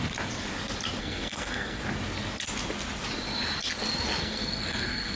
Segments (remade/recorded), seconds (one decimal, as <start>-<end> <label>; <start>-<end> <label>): 0.0-1.0 recorded; 1.0-1.8 remade; 1.8-4.2 recorded; 4.2-5.2 remade